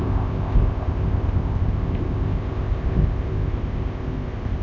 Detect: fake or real fake